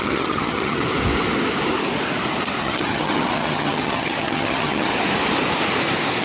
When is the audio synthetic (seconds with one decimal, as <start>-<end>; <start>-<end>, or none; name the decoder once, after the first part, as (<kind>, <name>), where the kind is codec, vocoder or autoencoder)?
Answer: 0.0-0.8 (vocoder, HiFi-GAN); 2.6-4.9